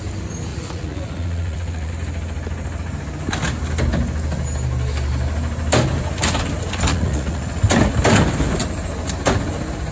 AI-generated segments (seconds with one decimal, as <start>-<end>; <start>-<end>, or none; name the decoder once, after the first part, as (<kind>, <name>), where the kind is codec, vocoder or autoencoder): 0.5-1.9 (vocoder, Vocos); 6.9-7.6